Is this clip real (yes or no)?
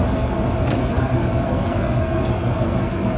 no